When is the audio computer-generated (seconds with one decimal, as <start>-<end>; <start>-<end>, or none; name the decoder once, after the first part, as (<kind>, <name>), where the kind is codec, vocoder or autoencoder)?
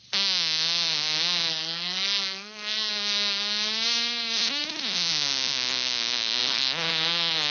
1.5-2.9 (codec, SNAC)